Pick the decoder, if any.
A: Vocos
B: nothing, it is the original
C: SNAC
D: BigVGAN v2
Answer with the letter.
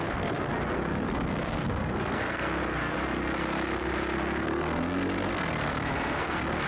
C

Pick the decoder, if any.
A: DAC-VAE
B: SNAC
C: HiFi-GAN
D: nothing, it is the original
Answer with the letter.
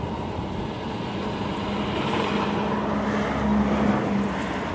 D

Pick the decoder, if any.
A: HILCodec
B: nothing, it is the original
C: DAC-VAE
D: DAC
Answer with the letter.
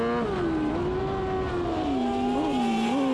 B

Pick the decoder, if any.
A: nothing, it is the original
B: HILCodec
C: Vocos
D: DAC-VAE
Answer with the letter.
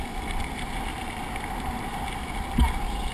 A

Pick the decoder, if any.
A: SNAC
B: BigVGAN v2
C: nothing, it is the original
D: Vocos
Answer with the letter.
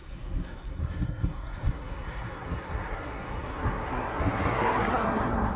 A